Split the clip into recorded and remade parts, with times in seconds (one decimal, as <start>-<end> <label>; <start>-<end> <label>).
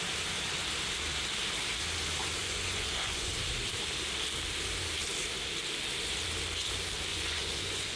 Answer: 0.0-2.4 recorded; 2.4-3.3 remade; 3.3-7.1 recorded; 7.1-8.0 remade